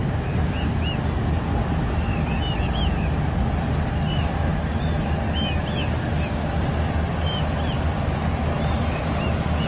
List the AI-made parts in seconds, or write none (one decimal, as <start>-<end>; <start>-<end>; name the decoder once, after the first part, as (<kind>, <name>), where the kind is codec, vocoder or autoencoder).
none